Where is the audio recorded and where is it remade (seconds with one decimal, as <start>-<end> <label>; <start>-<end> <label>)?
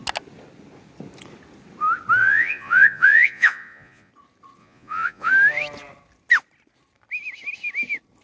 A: 0.0-2.2 recorded; 2.2-4.1 remade; 4.1-4.6 recorded; 4.6-5.3 remade; 5.3-8.2 recorded